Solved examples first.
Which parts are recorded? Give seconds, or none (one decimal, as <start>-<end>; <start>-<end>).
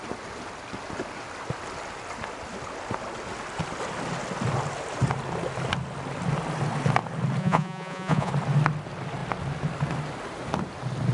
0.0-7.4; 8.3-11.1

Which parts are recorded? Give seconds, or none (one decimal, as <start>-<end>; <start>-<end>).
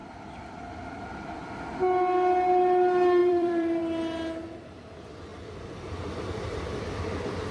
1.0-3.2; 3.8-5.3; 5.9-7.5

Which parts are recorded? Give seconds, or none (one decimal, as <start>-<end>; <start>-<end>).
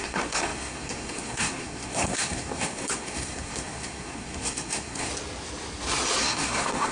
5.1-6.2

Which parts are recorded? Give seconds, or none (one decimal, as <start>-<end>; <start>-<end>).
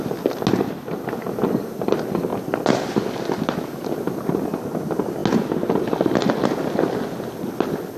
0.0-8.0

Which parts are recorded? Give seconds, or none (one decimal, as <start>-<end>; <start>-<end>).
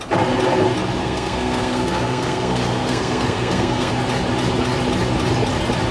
0.0-1.0; 3.9-5.9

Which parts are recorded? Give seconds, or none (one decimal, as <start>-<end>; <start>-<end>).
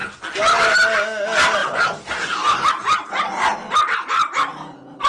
0.0-1.6; 2.7-4.5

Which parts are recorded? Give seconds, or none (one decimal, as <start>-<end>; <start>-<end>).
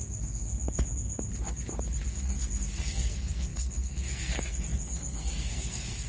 1.3-2.1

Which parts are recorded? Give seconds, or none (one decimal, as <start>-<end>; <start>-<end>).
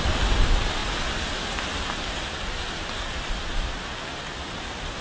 0.0-5.0